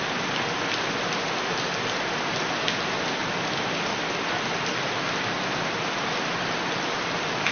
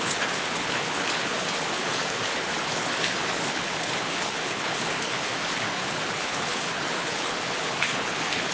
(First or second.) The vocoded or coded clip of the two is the second